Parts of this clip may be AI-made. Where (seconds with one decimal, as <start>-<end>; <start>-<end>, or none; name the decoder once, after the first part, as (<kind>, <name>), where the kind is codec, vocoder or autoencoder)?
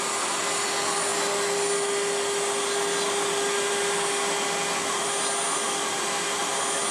none